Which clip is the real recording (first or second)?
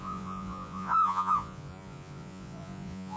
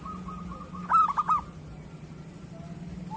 second